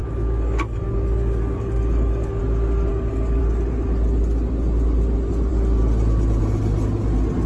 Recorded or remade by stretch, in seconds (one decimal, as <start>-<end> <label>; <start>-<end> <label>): 0.0-2.4 remade; 2.4-2.9 recorded; 2.9-3.4 remade; 3.4-7.5 recorded